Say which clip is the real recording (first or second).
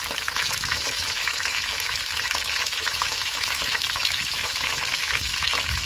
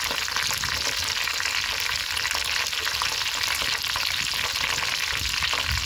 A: second